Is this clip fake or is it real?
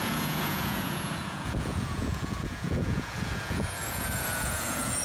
fake